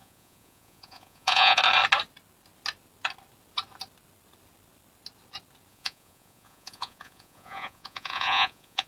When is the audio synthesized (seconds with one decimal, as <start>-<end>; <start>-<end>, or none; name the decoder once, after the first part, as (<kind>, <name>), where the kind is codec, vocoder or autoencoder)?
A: 0.0-1.6 (vocoder, Vocos); 5.7-8.9